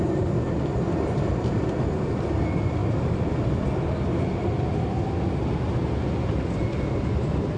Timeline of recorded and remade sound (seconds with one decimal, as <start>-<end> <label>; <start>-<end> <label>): 0.0-7.6 recorded